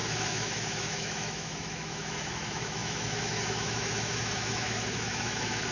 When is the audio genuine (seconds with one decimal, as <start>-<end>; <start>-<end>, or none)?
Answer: none